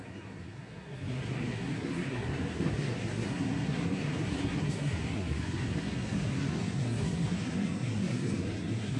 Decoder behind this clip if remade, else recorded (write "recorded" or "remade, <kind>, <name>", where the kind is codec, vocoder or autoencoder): remade, codec, SNAC